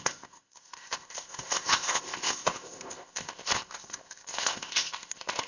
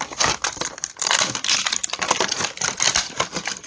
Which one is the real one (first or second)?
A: second